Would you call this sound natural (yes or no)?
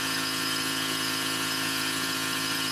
no